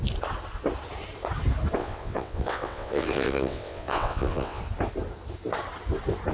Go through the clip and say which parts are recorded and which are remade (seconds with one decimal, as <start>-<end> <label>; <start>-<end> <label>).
0.0-1.8 recorded; 1.8-4.6 remade; 4.6-6.3 recorded